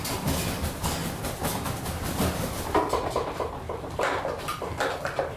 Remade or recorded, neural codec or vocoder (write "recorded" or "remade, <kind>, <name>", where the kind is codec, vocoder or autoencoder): remade, vocoder, BigVGAN v2